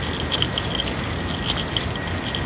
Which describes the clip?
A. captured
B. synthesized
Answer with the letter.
A